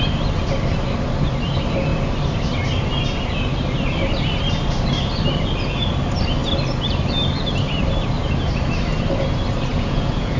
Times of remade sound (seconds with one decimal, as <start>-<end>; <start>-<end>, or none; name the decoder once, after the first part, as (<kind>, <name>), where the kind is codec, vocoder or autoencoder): 9.7-10.4 (vocoder, Vocos)